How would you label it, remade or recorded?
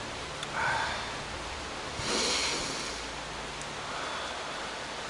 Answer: recorded